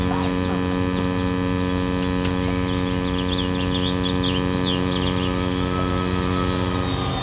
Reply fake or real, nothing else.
real